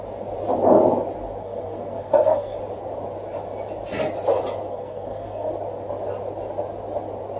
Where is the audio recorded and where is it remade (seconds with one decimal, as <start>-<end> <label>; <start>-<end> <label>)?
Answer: 0.0-1.4 recorded; 1.4-2.6 remade; 2.6-4.7 recorded; 4.7-5.5 remade; 5.5-7.4 recorded